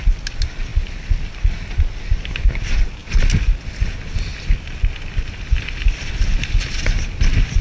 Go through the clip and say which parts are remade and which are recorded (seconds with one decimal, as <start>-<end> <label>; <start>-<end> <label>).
0.0-7.6 recorded